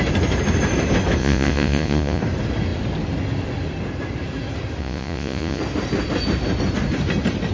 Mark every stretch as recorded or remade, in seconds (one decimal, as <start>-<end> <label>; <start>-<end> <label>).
0.0-1.2 recorded; 1.2-2.2 remade; 2.2-4.8 recorded; 4.8-5.6 remade; 5.6-7.5 recorded